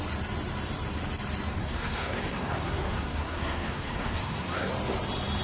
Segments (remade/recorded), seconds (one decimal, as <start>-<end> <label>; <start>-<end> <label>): 0.0-1.6 recorded; 1.6-4.7 remade; 4.7-5.4 recorded